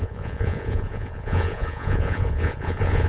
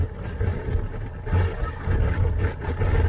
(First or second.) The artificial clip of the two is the first